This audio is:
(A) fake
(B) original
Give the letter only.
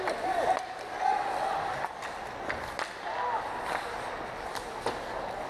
B